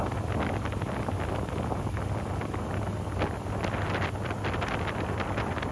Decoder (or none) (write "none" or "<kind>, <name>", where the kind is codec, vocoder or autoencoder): none